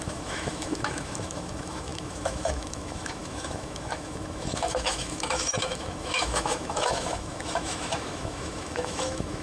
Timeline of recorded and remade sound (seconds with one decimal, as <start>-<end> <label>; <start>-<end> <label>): 0.0-9.4 remade